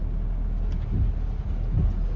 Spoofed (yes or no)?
no